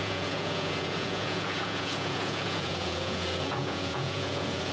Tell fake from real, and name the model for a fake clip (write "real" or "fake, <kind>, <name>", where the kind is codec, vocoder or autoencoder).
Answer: fake, vocoder, Vocos